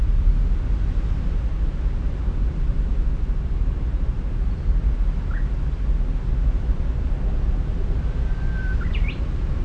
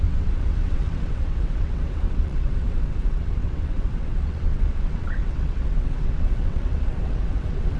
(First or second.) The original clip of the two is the first